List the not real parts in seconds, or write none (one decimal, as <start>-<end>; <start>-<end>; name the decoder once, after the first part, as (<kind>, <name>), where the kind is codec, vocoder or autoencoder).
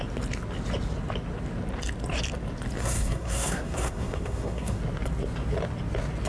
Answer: 2.8-4.8 (codec, SNAC)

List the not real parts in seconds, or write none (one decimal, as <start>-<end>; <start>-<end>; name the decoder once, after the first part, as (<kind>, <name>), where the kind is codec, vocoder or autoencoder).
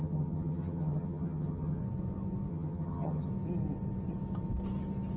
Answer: 0.0-1.8 (vocoder, HiFi-GAN); 2.5-3.3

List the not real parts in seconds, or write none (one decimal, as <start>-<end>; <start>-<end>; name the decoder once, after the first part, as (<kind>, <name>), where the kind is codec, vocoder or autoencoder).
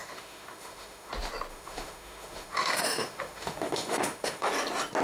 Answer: 0.0-1.1 (autoencoder, DAC-VAE); 1.5-4.5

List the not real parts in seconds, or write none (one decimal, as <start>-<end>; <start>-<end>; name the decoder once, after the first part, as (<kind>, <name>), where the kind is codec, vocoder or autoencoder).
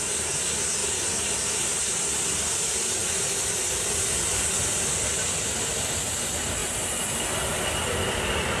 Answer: 6.6-7.4 (vocoder, BigVGAN v2)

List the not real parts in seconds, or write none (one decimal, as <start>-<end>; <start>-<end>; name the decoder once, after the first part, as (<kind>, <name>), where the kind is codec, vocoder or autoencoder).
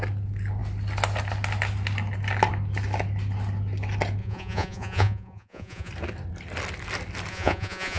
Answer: 4.2-5.9 (vocoder, Vocos); 7.3-8.0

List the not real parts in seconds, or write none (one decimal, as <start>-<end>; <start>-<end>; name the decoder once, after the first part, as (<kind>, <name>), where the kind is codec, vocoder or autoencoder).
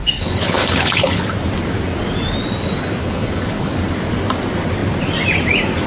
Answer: 0.0-1.2 (codec, HILCodec); 3.0-3.7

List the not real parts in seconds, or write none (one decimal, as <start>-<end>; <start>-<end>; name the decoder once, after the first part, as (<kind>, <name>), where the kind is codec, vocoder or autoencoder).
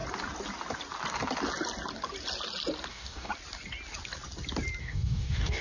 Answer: 2.9-3.3 (codec, DAC); 4.8-5.6